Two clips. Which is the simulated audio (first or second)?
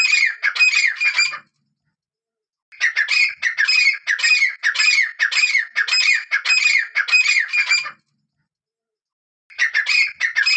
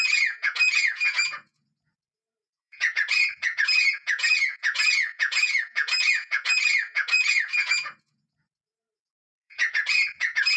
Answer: second